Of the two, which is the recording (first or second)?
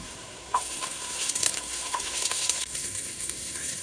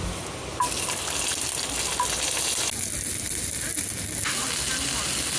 second